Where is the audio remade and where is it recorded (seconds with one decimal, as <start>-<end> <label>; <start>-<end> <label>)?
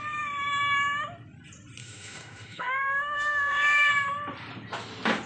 0.0-1.8 recorded; 1.8-3.9 remade; 3.9-5.3 recorded